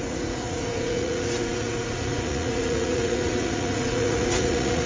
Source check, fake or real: fake